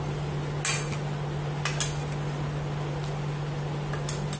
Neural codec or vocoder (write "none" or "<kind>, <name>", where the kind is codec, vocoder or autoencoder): none